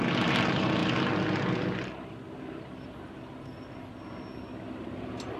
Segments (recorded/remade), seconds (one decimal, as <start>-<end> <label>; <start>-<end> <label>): 0.0-5.4 recorded